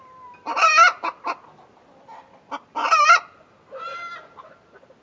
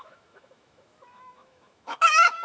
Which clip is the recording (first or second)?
first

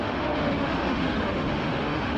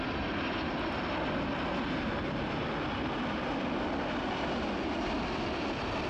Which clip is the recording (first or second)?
second